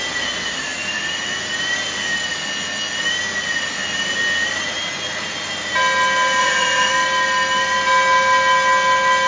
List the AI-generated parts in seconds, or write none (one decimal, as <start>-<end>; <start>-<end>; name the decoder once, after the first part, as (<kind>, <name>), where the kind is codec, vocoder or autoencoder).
6.4-6.9 (vocoder, Vocos)